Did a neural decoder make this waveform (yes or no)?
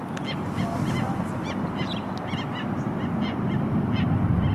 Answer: no